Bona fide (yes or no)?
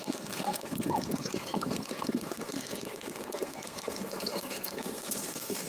no